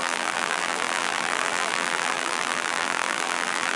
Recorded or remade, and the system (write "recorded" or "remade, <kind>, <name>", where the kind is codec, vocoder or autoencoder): remade, vocoder, BigVGAN v2